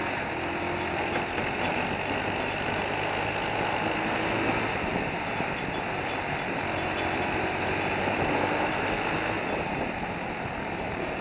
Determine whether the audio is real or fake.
real